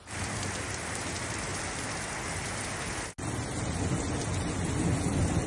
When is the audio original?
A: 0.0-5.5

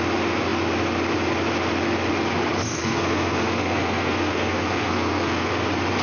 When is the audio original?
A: 0.0-2.8; 5.5-6.0

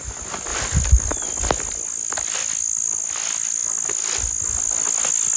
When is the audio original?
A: 0.0-5.4